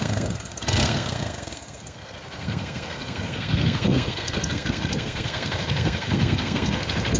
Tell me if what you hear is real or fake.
fake